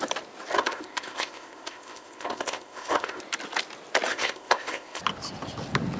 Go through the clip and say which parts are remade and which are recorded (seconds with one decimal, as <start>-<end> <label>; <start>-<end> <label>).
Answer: 0.0-0.6 recorded; 0.6-3.2 remade; 3.2-4.1 recorded; 4.1-5.0 remade; 5.0-6.0 recorded